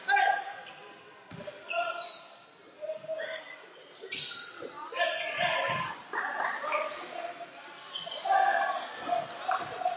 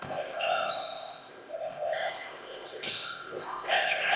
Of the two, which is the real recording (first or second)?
first